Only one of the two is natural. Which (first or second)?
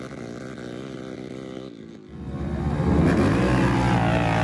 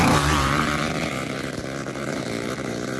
first